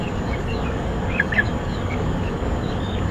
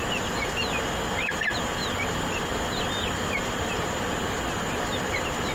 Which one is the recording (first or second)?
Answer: second